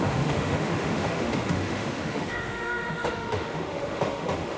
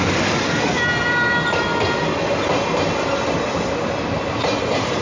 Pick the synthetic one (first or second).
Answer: first